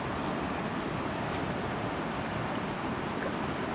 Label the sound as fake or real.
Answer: real